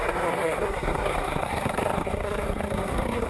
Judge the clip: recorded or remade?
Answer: remade